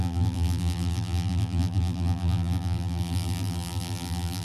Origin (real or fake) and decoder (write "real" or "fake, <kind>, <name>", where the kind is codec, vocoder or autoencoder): fake, vocoder, BigVGAN v2